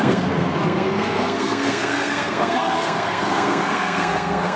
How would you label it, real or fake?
fake